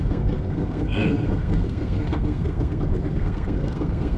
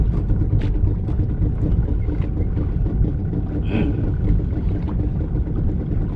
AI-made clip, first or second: first